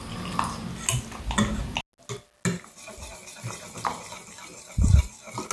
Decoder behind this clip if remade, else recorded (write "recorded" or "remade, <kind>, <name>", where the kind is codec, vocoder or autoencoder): recorded